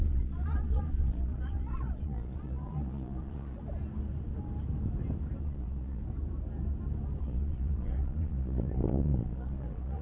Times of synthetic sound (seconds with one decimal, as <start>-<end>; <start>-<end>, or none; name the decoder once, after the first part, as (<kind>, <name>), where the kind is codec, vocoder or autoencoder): 0.0-3.6 (vocoder, Vocos); 5.4-6.0; 7.2-10.0